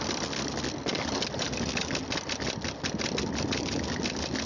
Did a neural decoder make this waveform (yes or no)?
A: no